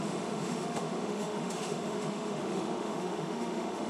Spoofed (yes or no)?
yes